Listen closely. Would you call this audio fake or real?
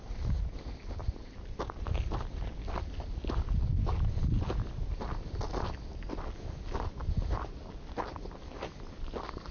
real